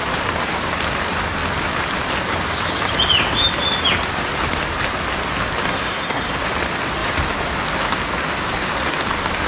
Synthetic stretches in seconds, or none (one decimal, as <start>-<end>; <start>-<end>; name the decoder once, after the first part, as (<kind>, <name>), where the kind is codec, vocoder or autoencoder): 5.7-6.3 (codec, SNAC)